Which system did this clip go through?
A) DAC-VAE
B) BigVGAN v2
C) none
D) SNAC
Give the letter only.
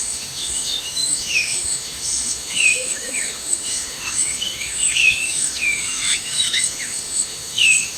A